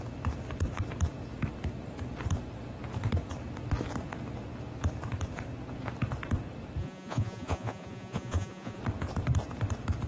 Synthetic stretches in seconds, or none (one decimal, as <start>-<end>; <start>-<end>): 6.8-8.8